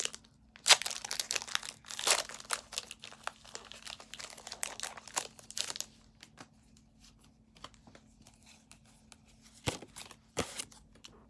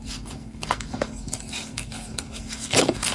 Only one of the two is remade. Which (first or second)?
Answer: second